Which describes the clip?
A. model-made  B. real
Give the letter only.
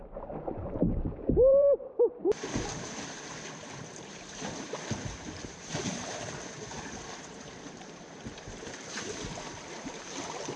A